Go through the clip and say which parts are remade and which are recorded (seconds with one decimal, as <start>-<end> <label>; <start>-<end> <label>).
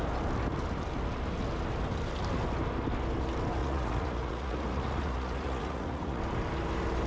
0.0-3.6 recorded; 3.6-6.2 remade; 6.2-7.1 recorded